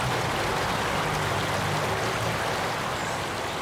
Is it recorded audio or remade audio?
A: recorded